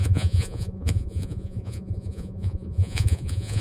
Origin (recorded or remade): remade